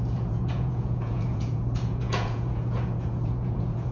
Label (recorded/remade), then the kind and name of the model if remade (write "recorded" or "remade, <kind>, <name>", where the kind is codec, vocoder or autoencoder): remade, vocoder, Vocos